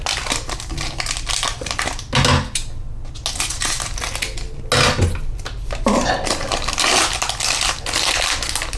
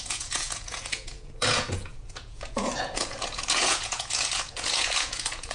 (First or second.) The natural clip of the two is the first